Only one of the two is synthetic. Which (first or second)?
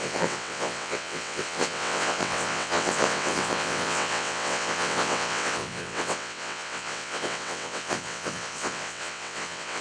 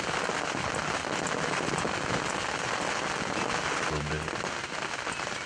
first